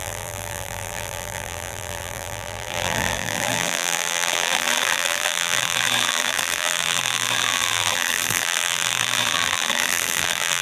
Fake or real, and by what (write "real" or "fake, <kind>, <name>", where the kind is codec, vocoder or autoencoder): fake, vocoder, BigVGAN v2